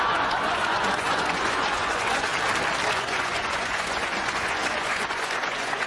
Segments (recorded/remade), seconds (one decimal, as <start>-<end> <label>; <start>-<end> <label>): 0.0-2.3 remade; 2.3-2.9 recorded; 2.9-5.9 remade